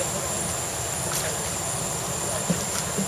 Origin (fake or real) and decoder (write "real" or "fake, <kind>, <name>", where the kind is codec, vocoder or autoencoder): real